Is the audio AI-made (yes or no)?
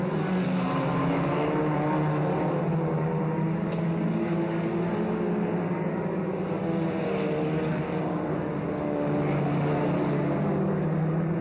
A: no